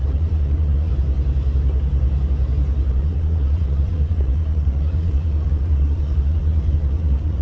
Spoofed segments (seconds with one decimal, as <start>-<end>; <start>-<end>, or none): 0.0-0.9; 2.9-7.4